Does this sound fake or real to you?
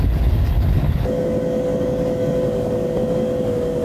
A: fake